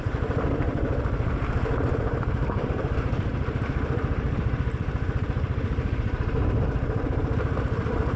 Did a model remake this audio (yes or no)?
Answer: yes